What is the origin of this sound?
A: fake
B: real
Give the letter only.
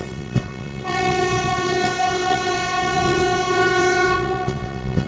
A